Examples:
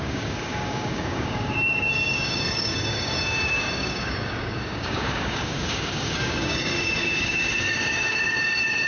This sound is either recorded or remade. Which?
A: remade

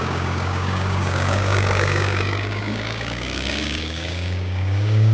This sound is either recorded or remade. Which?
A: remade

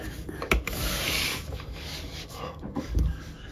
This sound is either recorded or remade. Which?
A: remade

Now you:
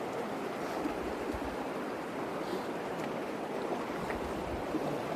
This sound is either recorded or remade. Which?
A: recorded